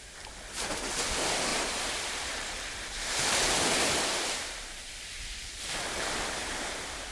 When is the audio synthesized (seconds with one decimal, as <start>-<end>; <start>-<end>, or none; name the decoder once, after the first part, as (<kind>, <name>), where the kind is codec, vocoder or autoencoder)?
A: 1.5-5.8 (vocoder, BigVGAN v2)